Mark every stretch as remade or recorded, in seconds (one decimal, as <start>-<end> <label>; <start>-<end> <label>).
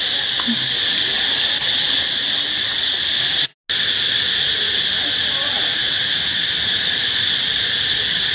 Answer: 0.0-5.8 recorded; 5.8-6.9 remade; 6.9-8.3 recorded